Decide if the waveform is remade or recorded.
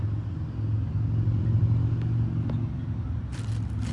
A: recorded